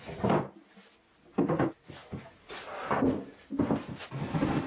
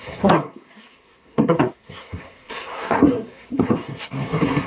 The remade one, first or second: second